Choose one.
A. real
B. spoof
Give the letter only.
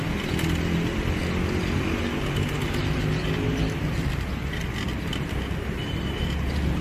A